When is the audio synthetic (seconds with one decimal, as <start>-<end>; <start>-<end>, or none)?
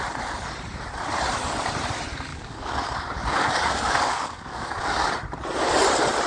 2.3-5.1